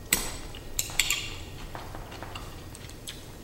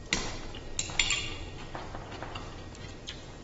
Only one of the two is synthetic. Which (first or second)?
first